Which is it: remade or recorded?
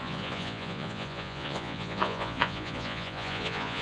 remade